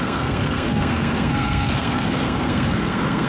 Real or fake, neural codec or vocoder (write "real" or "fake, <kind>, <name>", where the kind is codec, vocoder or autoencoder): fake, codec, SNAC